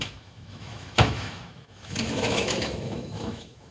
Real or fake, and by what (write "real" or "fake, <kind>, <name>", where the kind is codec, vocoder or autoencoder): fake, autoencoder, DAC-VAE